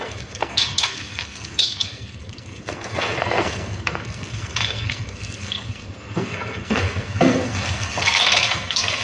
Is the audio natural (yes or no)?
no